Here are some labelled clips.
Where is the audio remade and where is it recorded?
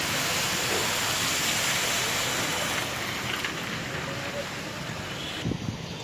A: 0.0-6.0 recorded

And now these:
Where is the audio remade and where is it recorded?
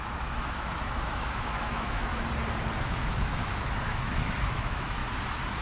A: 0.0-2.1 remade; 2.1-2.8 recorded; 2.8-5.0 remade; 5.0-5.6 recorded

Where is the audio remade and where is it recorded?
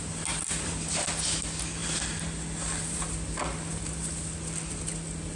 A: 0.0-5.3 recorded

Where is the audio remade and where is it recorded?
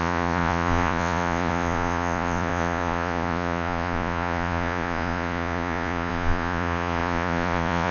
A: 0.0-7.9 remade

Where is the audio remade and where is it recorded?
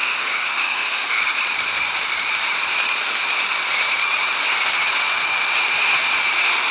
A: 0.0-1.2 remade; 1.2-6.7 recorded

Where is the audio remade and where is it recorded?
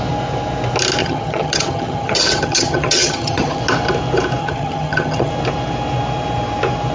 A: 0.0-1.0 recorded; 1.0-3.6 remade; 3.6-4.4 recorded; 4.4-5.3 remade; 5.3-6.9 recorded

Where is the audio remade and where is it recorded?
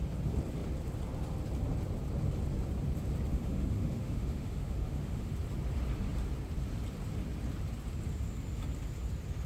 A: 0.0-3.3 recorded; 3.3-5.3 remade; 5.3-9.5 recorded